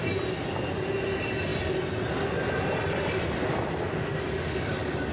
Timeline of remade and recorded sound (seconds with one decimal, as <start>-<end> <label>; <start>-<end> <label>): 0.0-4.1 recorded; 4.1-5.1 remade